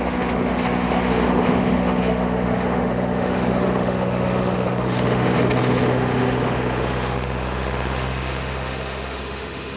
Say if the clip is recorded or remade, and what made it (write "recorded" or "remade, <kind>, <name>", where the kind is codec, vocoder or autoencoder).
remade, autoencoder, DAC-VAE